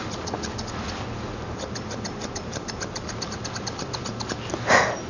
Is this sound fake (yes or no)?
no